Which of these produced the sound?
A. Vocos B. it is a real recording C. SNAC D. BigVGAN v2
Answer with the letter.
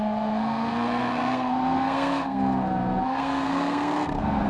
C